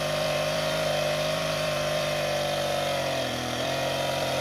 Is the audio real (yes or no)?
no